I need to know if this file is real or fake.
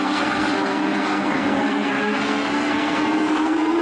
fake